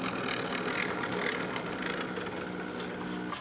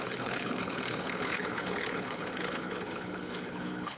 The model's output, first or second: second